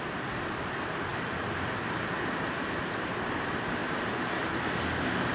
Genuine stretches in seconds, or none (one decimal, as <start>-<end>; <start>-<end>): 0.0-1.1; 3.1-5.3